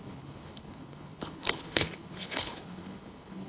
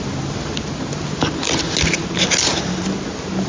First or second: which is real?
second